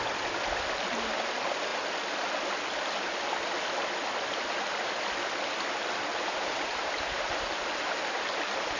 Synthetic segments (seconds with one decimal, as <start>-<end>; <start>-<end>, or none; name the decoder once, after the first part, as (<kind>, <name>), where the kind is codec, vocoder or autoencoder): 6.1-7.7 (vocoder, BigVGAN v2)